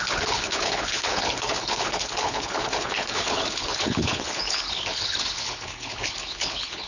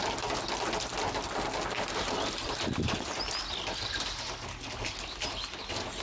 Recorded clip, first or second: second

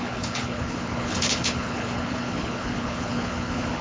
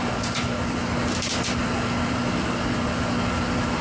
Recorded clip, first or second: second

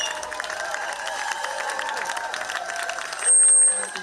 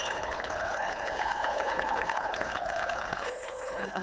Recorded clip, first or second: first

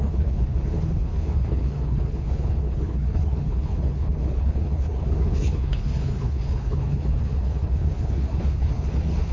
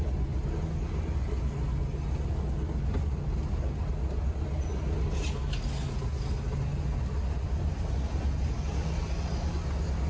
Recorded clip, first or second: second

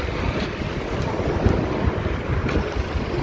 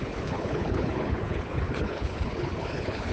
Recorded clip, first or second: first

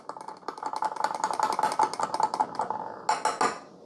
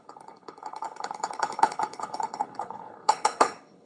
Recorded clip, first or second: first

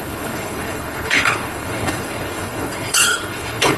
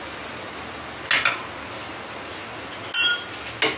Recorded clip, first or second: second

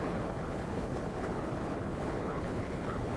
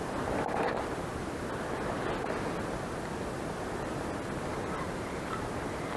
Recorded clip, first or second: second